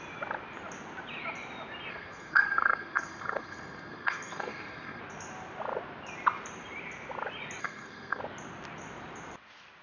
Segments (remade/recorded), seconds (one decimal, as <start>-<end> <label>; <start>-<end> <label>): 0.0-1.9 recorded; 1.9-5.0 remade; 5.0-7.6 recorded; 7.6-8.2 remade; 8.2-9.8 recorded